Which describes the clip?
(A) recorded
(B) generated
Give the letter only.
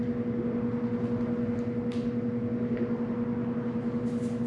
A